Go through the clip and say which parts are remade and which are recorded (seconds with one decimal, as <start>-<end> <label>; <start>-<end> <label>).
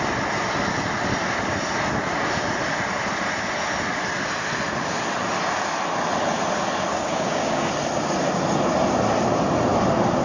0.0-6.9 recorded; 6.9-7.7 remade; 7.7-10.2 recorded